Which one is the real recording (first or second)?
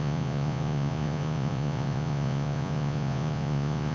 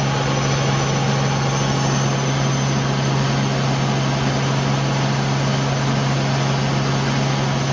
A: second